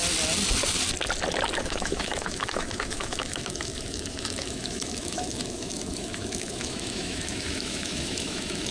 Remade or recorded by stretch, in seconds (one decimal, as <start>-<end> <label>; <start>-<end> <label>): 0.0-1.6 recorded; 1.6-8.7 remade